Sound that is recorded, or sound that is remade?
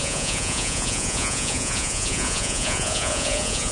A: remade